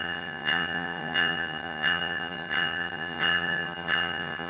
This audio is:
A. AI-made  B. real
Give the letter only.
A